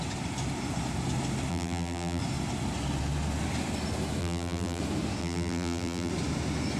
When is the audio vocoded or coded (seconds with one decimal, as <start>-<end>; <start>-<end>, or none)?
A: 1.5-2.2; 4.2-4.8; 5.2-6.1